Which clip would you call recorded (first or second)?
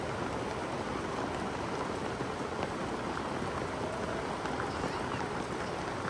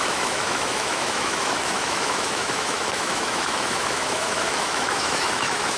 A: first